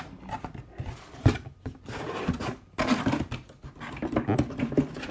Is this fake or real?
real